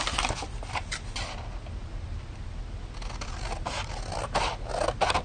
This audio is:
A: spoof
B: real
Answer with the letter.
B